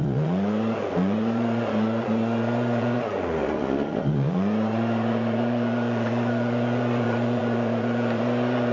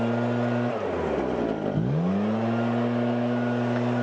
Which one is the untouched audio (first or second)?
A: second